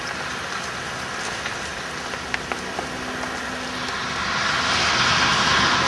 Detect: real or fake real